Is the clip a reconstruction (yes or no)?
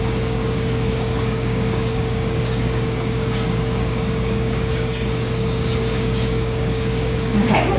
yes